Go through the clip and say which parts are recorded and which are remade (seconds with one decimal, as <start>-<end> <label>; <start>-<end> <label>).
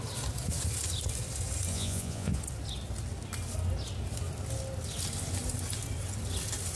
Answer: 0.0-1.7 recorded; 1.7-2.4 remade; 2.4-6.8 recorded